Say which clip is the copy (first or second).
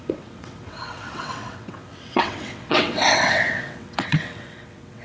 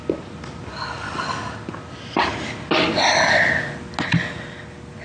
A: first